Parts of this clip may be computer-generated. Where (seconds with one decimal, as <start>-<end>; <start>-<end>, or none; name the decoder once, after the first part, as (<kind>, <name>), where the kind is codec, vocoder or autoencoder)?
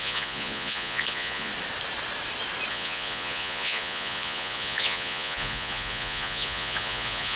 0.0-1.5 (vocoder, Vocos); 2.7-7.4